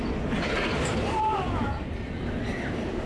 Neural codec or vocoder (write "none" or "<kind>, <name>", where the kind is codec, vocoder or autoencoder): none